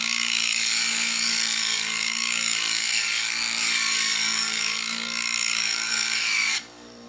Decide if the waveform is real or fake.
fake